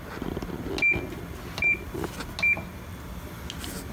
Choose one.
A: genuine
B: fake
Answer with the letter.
A